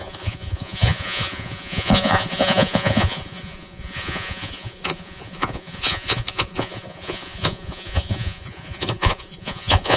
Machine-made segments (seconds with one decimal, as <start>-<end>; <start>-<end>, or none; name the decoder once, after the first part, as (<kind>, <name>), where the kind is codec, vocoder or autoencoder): 0.0-10.0 (vocoder, Vocos)